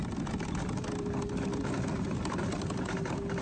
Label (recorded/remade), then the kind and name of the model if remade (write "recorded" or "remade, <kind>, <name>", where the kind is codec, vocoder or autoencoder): recorded